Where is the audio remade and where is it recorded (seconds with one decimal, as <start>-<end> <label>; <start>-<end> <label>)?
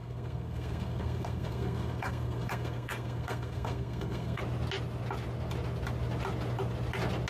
0.0-4.4 remade; 4.4-7.3 recorded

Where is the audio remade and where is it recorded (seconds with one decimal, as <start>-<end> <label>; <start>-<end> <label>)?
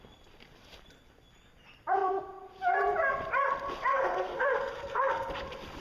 0.0-3.9 recorded; 3.9-5.3 remade; 5.3-5.8 recorded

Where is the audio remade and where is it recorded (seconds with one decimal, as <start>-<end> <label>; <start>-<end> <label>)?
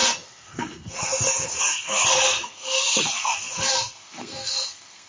0.0-5.1 remade